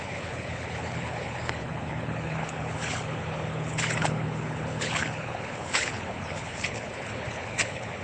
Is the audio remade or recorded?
remade